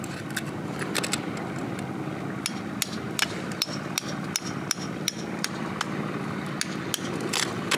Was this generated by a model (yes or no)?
no